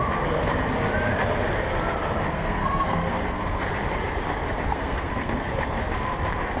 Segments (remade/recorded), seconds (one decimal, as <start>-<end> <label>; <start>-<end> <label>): 0.0-2.3 recorded; 2.3-3.6 remade; 3.6-4.7 recorded; 4.7-5.5 remade; 5.5-6.6 recorded